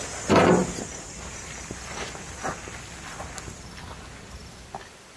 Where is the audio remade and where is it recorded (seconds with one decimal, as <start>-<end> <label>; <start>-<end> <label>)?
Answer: 0.0-0.6 recorded; 0.6-1.7 remade; 1.7-5.2 recorded